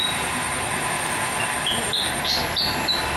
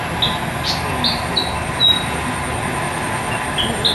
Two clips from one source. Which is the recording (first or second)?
second